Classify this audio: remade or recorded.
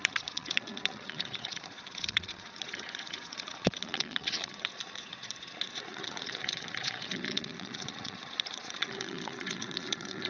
remade